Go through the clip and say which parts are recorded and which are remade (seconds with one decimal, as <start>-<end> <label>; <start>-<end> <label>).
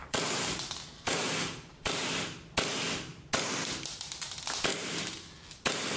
0.0-2.1 remade; 2.1-4.7 recorded; 4.7-5.3 remade; 5.3-6.0 recorded